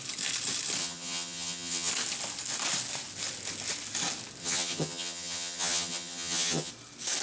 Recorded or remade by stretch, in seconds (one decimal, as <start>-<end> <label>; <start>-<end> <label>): 0.0-0.8 recorded; 0.8-1.9 remade; 1.9-4.4 recorded; 4.4-6.7 remade; 6.7-7.2 recorded